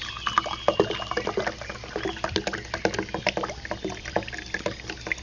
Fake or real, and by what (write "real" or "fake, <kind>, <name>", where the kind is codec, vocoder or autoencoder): real